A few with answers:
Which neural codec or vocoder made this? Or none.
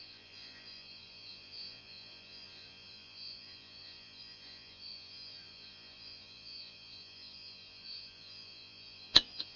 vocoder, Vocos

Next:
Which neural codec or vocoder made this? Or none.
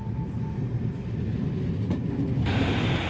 none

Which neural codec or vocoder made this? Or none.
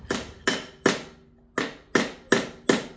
none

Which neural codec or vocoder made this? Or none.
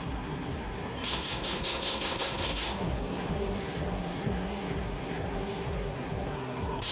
codec, SNAC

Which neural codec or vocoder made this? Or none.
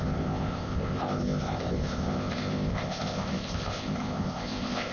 codec, ZipCodec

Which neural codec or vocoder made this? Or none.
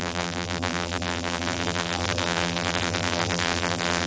vocoder, BigVGAN v2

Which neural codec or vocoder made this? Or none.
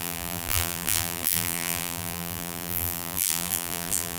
vocoder, BigVGAN v2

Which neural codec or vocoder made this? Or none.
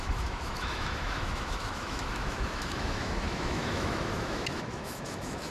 autoencoder, DAC-VAE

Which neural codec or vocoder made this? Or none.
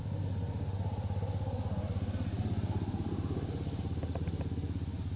none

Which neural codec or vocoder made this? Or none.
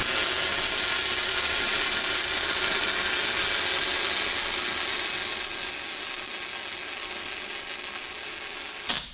none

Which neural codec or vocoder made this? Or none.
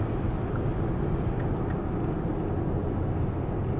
none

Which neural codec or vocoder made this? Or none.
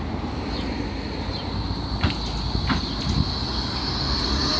none